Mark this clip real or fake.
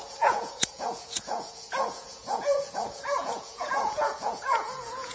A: fake